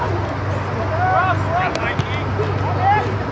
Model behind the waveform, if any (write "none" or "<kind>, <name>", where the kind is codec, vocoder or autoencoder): none